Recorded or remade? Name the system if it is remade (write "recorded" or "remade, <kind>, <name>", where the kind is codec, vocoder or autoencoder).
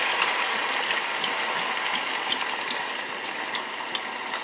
recorded